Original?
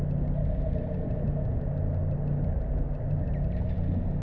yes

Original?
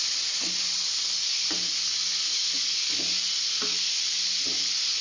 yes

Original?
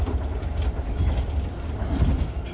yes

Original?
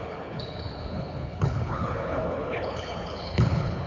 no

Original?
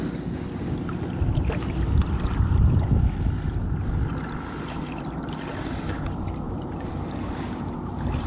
yes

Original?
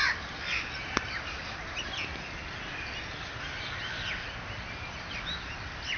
yes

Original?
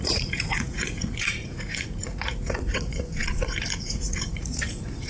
no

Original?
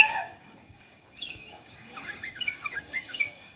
no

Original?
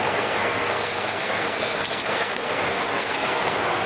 no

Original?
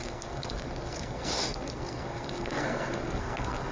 no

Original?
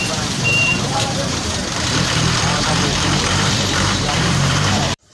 no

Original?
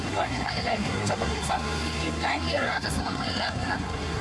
no